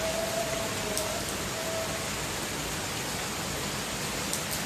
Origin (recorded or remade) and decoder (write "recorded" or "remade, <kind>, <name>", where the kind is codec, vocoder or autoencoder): recorded